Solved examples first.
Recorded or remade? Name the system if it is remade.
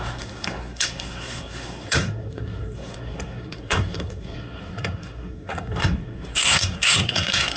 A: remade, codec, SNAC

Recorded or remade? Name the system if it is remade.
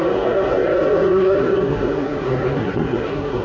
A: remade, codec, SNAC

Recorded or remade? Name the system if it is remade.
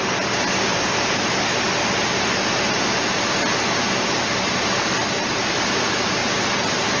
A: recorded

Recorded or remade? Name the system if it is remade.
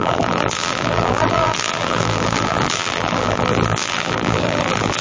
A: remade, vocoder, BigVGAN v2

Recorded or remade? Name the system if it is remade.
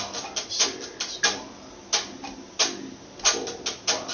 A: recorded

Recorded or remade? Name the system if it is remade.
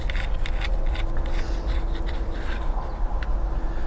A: recorded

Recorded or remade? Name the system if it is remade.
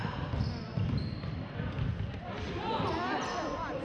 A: remade, vocoder, BigVGAN v2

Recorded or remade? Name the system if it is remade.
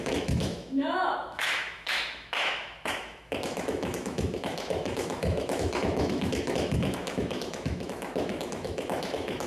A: remade, autoencoder, DAC-VAE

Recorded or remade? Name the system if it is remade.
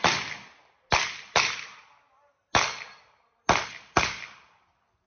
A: recorded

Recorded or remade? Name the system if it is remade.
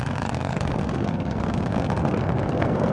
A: remade, codec, SNAC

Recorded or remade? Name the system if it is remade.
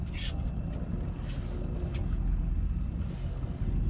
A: recorded